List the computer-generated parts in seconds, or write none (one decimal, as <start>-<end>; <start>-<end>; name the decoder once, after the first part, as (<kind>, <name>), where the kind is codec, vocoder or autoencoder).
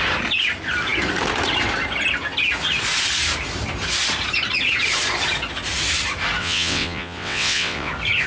6.4-7.9 (vocoder, WaveNeXt)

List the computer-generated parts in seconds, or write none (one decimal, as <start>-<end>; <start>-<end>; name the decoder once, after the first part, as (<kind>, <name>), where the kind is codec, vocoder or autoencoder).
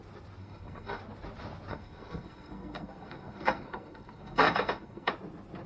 0.4-1.0 (codec, SNAC); 1.7-5.1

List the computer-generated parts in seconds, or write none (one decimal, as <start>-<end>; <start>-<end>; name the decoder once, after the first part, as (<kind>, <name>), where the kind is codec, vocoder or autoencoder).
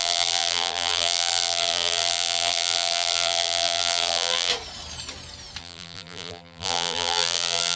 0.0-4.5 (vocoder, BigVGAN v2); 5.6-7.8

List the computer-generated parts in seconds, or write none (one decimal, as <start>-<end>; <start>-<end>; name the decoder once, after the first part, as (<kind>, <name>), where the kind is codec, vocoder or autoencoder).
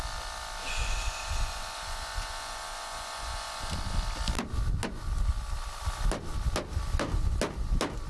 0.6-3.7 (vocoder, Vocos)